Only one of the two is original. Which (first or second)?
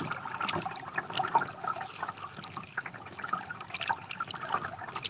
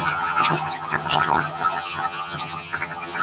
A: first